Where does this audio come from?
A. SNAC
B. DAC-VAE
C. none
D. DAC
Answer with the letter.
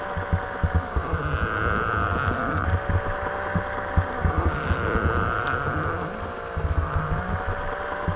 C